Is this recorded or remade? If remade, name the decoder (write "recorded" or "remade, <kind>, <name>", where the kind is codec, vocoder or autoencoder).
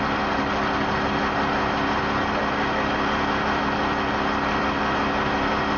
recorded